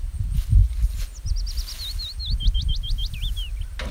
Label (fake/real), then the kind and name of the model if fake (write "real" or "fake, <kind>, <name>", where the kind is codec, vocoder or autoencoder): real